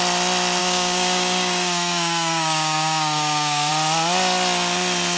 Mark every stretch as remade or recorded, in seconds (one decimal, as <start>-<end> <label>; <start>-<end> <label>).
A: 0.0-0.6 recorded; 0.6-3.7 remade; 3.7-5.2 recorded